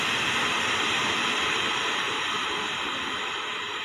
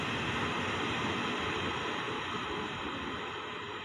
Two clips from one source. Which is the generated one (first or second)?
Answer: first